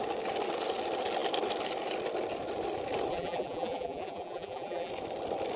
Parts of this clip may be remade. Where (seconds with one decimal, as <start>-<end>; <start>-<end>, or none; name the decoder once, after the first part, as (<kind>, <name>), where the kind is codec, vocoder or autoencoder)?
3.1-4.9 (vocoder, BigVGAN v2)